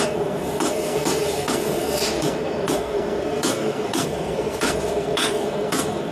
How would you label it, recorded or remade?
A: remade